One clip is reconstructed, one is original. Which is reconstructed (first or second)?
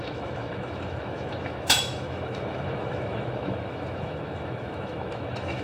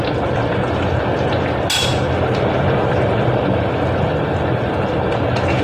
first